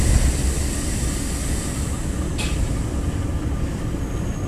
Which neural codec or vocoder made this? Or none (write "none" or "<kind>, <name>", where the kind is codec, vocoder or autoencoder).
none